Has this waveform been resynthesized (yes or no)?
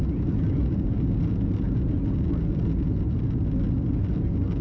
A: no